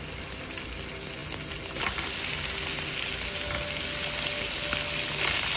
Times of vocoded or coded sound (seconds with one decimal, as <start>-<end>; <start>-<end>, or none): none